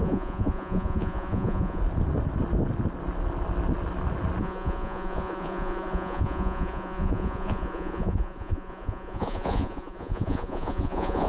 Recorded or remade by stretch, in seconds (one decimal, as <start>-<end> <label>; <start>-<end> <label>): 0.0-1.8 remade; 1.8-4.4 recorded; 4.4-11.3 remade